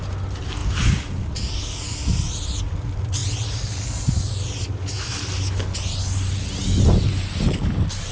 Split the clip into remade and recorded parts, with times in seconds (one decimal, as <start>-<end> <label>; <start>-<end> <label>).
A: 0.0-8.1 recorded